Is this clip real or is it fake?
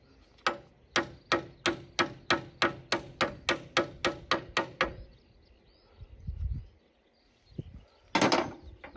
real